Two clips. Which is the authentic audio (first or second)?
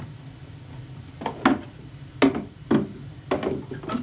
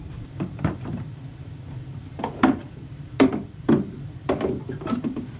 first